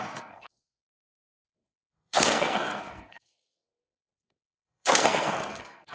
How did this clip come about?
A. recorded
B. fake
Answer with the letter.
B